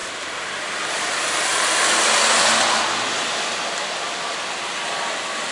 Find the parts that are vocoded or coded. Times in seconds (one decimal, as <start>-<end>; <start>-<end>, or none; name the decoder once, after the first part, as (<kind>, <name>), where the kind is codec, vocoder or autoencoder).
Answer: none